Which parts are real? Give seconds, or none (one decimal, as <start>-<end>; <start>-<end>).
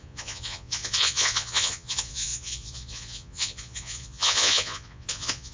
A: none